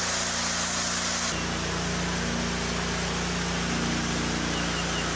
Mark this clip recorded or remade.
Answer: recorded